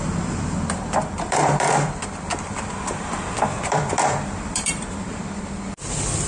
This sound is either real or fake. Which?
fake